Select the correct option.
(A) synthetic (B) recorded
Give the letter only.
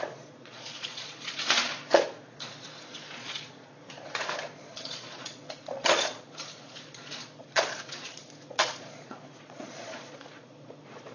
A